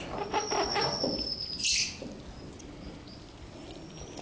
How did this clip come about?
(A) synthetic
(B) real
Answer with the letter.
B